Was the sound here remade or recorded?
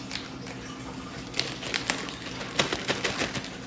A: recorded